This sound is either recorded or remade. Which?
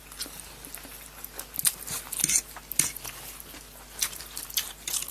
recorded